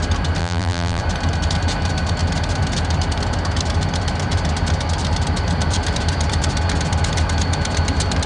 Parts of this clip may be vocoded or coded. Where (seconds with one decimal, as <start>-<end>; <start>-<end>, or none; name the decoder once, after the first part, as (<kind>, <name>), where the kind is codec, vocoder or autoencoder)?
0.4-1.0 (vocoder, BigVGAN v2)